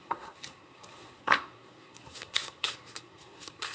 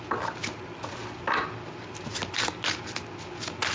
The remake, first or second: first